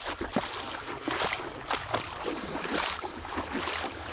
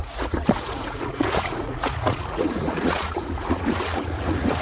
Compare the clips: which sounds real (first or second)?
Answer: first